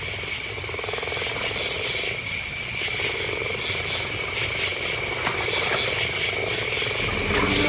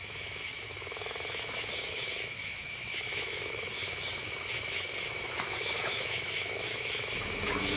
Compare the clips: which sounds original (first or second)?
first